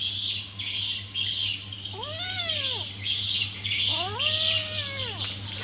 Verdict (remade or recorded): recorded